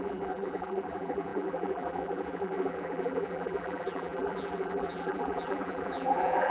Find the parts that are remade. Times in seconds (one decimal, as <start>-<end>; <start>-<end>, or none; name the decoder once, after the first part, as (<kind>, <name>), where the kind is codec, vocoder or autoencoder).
0.0-6.5 (vocoder, BigVGAN v2)